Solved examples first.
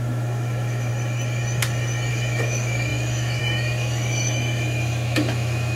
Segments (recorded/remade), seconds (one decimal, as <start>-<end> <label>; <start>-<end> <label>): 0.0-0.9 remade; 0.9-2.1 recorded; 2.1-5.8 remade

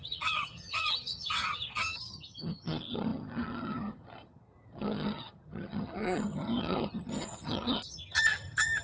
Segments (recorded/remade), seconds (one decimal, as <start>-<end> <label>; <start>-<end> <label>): 0.0-8.8 remade

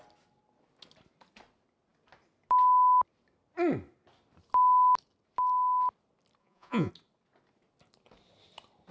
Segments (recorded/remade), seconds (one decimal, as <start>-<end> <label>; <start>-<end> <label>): 0.0-6.4 recorded; 6.4-6.9 remade; 6.9-8.9 recorded

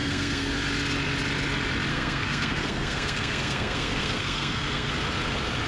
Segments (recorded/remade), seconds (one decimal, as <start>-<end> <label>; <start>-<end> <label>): 0.0-0.5 remade; 0.5-1.9 recorded; 1.9-4.9 remade; 4.9-5.7 recorded

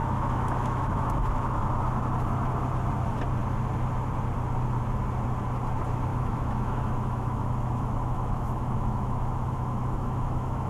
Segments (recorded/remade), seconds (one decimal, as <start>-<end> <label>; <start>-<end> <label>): 0.0-1.6 remade; 1.6-6.1 recorded; 6.1-10.7 remade

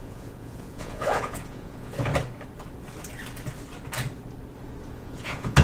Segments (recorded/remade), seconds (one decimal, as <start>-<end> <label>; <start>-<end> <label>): 0.0-2.1 remade; 2.1-4.9 recorded; 4.9-5.6 remade

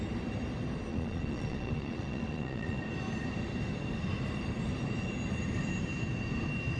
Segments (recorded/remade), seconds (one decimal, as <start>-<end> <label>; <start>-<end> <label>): 0.0-0.9 recorded; 0.9-2.8 remade; 2.8-6.8 recorded

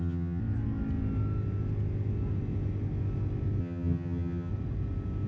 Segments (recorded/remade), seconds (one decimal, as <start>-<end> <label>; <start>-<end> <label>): 0.0-0.4 remade; 0.4-3.6 recorded; 3.6-4.5 remade; 4.5-5.3 recorded